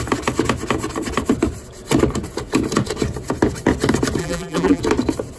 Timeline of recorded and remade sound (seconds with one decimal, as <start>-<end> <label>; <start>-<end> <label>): 0.0-4.2 recorded; 4.2-4.8 remade; 4.8-5.4 recorded

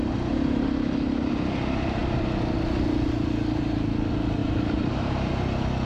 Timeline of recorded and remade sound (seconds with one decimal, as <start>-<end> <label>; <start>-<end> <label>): 0.0-4.4 recorded; 4.4-5.3 remade; 5.3-5.9 recorded

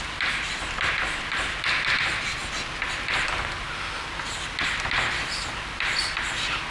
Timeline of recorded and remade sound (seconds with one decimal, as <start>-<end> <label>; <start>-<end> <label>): 0.0-6.7 recorded

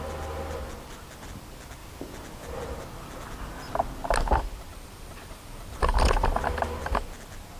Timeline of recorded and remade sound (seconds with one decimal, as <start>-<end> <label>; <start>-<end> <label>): 0.0-4.7 recorded; 4.7-6.4 remade; 6.4-7.6 recorded